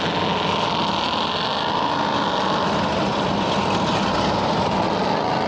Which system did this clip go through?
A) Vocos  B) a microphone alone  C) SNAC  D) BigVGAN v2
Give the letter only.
B